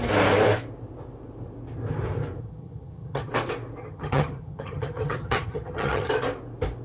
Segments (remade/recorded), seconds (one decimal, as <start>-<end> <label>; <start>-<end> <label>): 0.0-2.4 recorded; 2.4-3.3 remade; 3.3-3.8 recorded; 3.8-6.1 remade; 6.1-6.8 recorded